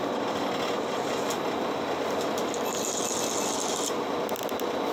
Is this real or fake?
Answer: real